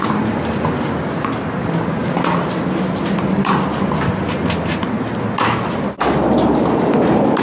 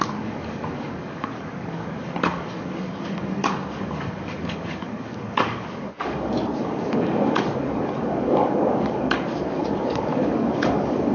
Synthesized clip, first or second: second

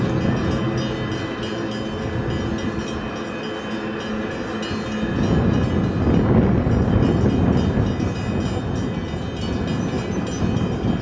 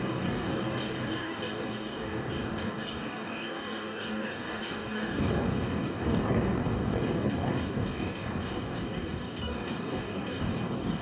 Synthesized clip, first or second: second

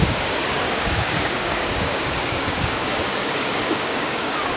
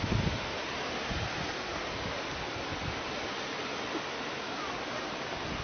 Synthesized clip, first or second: first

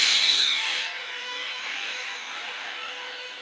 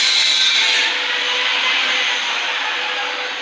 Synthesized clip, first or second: first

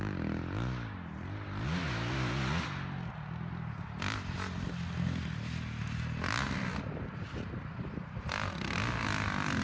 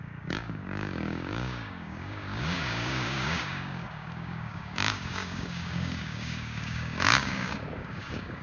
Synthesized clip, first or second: second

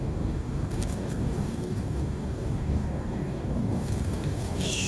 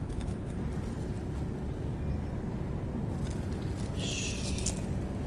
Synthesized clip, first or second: first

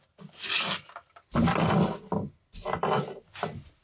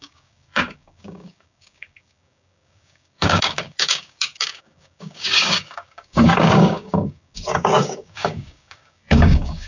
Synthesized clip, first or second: second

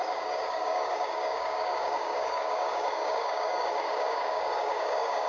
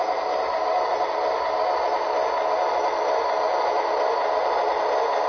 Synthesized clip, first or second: first